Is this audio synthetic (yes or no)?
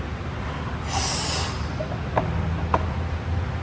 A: no